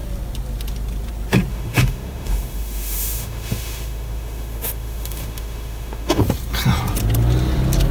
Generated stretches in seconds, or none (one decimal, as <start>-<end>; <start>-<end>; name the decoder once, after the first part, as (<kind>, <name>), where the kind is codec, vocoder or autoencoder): 1.5-6.2 (autoencoder, DAC-VAE)